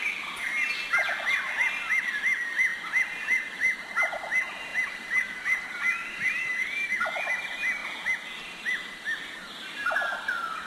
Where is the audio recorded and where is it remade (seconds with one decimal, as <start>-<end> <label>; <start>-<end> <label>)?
0.0-4.7 recorded; 4.7-6.9 remade; 6.9-10.7 recorded